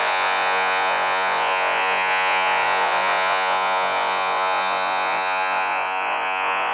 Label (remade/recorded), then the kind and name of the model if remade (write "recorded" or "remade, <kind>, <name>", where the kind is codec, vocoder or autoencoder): remade, vocoder, Vocos